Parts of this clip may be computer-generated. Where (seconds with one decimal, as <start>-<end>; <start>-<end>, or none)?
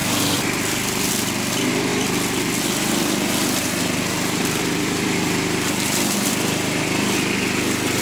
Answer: 0.0-1.1; 1.9-6.3